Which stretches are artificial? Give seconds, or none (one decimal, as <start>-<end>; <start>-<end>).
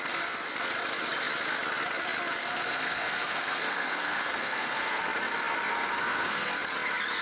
2.4-5.0; 5.7-6.5